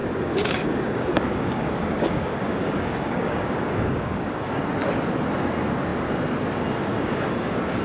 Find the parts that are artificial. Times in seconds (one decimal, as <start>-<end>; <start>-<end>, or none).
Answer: 0.0-4.6; 6.9-7.8